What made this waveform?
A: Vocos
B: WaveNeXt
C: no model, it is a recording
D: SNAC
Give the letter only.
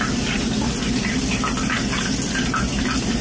C